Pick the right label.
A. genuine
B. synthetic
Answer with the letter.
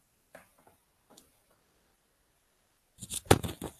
A